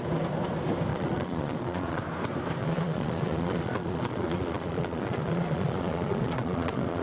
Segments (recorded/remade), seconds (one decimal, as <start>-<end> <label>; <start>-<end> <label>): 0.0-0.9 recorded; 0.9-2.0 remade; 2.0-2.6 recorded; 2.6-7.0 remade